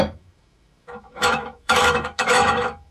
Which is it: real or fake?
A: fake